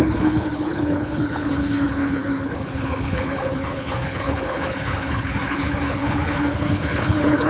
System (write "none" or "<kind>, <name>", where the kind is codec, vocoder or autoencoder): codec, HILCodec